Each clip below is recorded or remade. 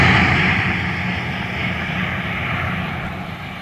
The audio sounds recorded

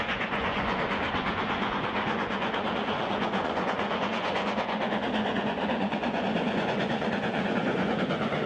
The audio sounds remade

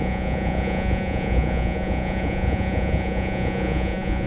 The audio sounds remade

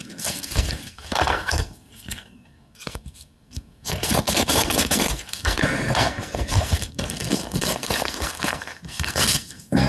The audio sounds remade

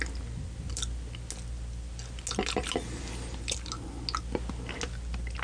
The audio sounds recorded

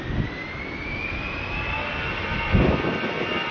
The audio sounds recorded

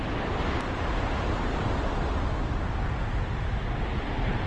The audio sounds recorded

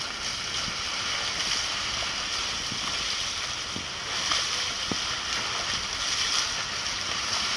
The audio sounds recorded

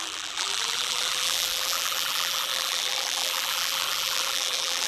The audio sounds remade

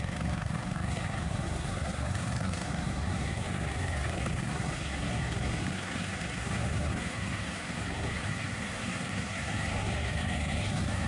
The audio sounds remade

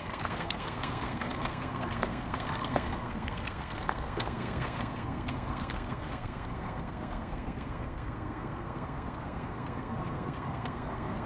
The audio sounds remade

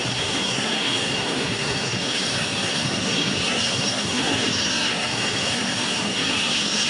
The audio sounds remade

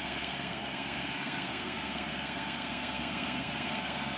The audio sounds remade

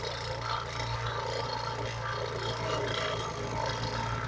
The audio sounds recorded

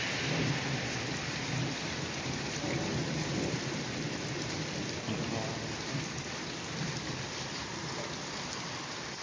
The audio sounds remade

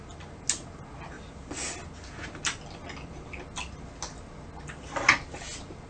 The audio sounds recorded